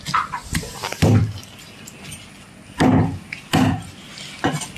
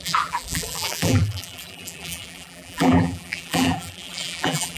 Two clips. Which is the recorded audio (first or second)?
first